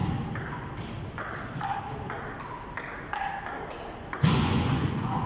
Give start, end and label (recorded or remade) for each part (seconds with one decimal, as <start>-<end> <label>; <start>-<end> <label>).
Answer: 0.0-4.0 recorded; 4.0-5.3 remade